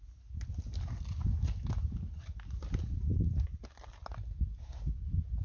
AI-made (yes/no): no